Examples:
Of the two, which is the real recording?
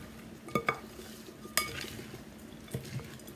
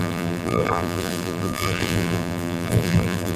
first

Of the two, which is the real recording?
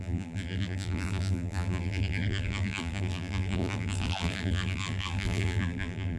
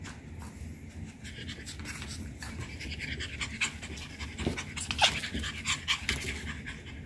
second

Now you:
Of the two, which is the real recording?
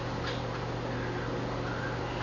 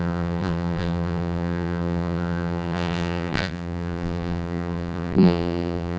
first